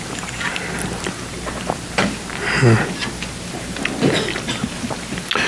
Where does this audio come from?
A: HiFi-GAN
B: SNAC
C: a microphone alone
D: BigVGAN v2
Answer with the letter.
C